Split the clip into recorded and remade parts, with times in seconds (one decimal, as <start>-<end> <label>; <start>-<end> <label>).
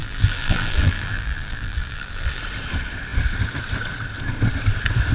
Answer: 0.0-2.4 remade; 2.4-5.1 recorded